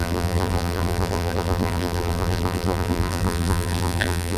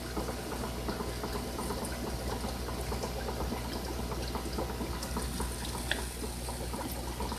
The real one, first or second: second